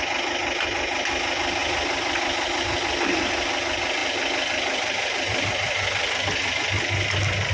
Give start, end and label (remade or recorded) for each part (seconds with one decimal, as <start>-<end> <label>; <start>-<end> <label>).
0.0-7.5 recorded